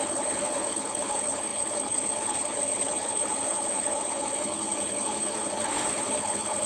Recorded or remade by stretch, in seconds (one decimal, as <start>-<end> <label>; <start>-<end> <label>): 0.0-6.7 remade